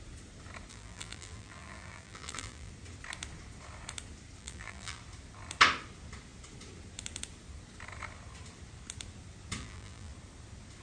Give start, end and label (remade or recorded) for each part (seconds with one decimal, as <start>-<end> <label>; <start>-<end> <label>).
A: 0.0-0.7 recorded; 0.7-2.7 remade; 2.7-4.4 recorded; 4.4-5.0 remade; 5.0-9.6 recorded; 9.6-10.1 remade; 10.1-10.8 recorded